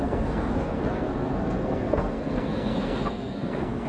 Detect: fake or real fake